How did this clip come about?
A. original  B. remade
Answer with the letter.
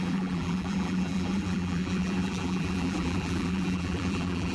B